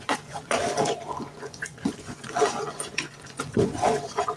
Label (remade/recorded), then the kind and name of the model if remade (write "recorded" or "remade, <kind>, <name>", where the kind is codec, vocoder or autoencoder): remade, vocoder, Vocos